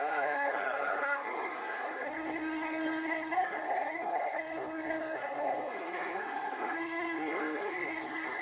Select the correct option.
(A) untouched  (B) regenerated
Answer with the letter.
B